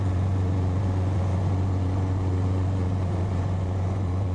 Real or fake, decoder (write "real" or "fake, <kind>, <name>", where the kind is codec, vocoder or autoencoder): fake, vocoder, Vocos